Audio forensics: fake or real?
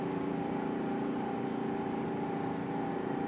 fake